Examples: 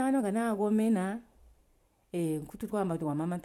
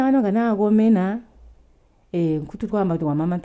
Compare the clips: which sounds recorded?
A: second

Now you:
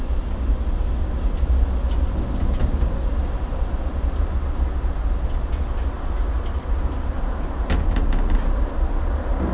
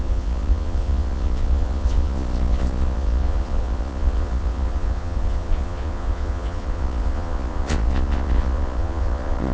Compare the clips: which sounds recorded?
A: first